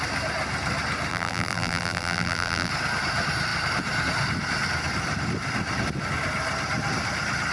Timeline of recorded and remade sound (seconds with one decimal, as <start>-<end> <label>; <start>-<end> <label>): 0.0-1.1 recorded; 1.1-2.7 remade; 2.7-7.5 recorded

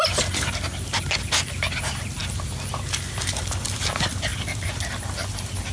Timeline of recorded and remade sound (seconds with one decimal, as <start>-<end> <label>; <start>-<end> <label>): 0.0-4.3 recorded; 4.3-4.8 remade; 4.8-5.7 recorded

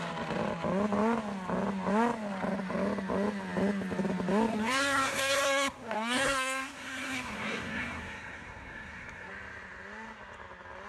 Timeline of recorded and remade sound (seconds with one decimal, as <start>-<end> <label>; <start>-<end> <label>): 0.0-4.5 recorded; 4.5-9.3 remade; 9.3-10.9 recorded

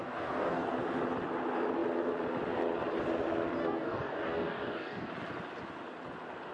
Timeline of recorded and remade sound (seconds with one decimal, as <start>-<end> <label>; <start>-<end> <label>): 0.0-0.7 remade; 0.7-3.6 recorded; 3.6-5.1 remade; 5.1-6.5 recorded

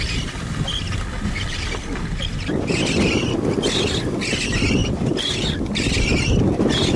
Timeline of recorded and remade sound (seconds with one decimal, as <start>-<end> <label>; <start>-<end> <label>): 0.0-4.8 recorded; 4.8-5.5 remade; 5.5-7.0 recorded